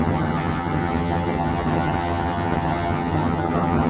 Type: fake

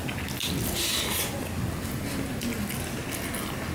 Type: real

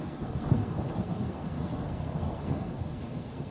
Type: fake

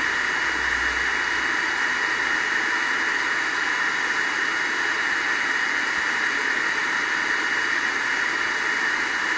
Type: real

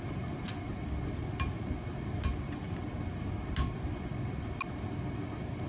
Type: real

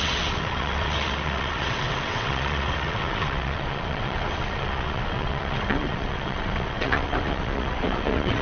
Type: fake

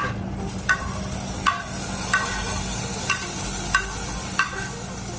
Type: real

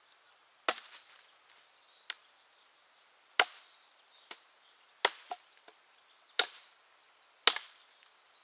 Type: real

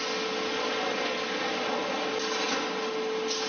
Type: real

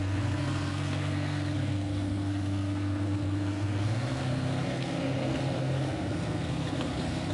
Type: fake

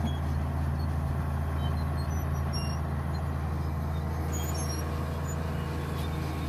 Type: real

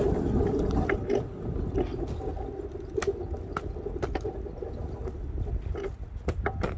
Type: real